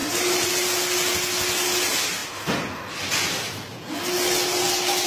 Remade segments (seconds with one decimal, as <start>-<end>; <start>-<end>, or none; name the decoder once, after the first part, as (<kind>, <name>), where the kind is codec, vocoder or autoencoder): 0.0-0.5 (vocoder, BigVGAN v2)